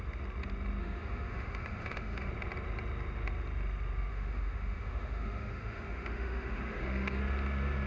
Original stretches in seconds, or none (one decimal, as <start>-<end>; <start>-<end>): 0.0-0.8; 2.3-4.1; 7.2-7.9